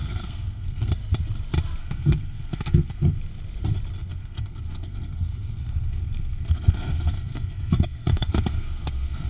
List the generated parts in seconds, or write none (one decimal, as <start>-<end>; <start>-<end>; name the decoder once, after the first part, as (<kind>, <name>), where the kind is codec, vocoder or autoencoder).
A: 0.0-0.9 (codec, SNAC); 1.8-3.2; 4.1-9.3